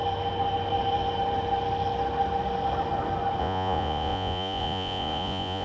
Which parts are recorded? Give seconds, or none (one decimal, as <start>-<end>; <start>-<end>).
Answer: 0.0-3.4